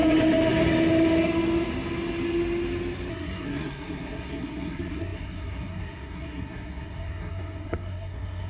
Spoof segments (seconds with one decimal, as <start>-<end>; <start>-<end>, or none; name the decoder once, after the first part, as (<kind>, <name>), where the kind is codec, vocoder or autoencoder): 3.1-8.5 (codec, SNAC)